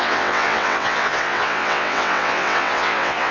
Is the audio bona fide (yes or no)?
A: no